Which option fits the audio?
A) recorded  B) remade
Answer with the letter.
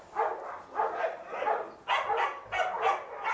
A